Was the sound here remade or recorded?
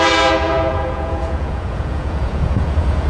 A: remade